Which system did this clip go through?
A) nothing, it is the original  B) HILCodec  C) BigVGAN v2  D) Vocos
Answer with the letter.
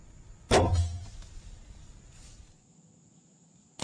A